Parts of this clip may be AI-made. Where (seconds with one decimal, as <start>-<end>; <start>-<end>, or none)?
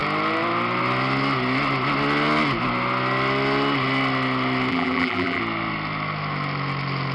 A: 4.7-5.4